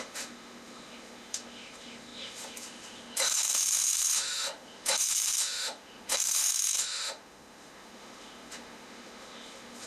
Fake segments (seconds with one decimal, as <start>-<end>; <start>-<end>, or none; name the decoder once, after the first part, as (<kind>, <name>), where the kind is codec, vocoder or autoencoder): 0.0-9.9 (autoencoder, DAC-VAE)